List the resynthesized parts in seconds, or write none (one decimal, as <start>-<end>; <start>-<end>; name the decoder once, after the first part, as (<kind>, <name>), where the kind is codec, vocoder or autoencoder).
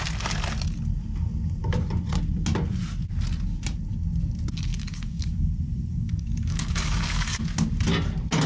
4.7-5.5 (codec, DAC); 5.9-7.4